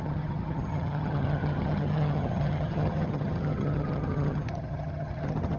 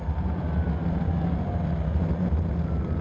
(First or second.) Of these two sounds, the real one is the second